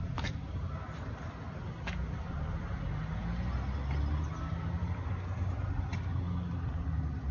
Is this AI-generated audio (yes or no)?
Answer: no